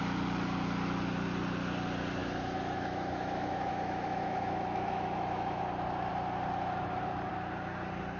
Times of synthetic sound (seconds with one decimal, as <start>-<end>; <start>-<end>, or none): 2.2-5.6